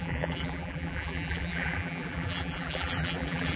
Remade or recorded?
remade